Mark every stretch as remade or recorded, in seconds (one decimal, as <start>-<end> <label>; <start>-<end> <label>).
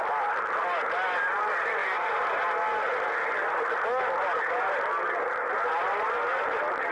0.0-6.9 recorded